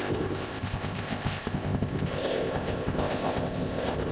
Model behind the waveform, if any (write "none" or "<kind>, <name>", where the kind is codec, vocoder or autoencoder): codec, ZipCodec